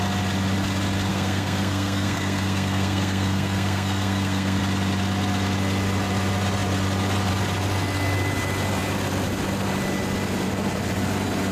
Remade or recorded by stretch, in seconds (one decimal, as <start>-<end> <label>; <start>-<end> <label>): 0.0-1.1 recorded; 1.1-4.6 remade; 4.6-11.5 recorded